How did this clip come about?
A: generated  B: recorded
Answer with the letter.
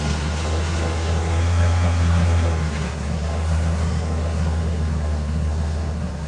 A